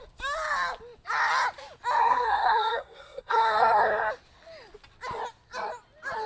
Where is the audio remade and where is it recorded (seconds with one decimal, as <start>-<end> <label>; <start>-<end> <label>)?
0.0-2.0 recorded; 2.0-4.1 remade; 4.1-6.3 recorded